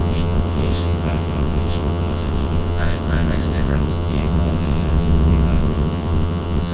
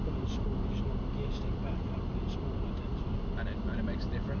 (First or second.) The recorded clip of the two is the second